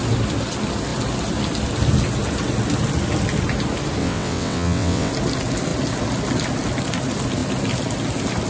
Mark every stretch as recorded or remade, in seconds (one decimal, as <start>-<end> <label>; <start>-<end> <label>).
0.0-4.0 recorded; 4.0-5.1 remade; 5.1-8.5 recorded